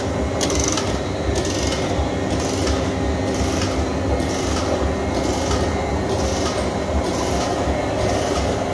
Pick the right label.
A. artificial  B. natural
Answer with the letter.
B